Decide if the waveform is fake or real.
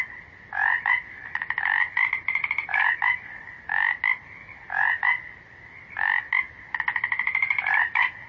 real